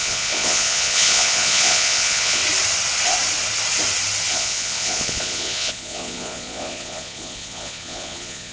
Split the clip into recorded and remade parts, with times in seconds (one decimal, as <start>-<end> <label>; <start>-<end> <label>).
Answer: 0.0-2.4 remade; 2.4-4.3 recorded; 4.3-8.5 remade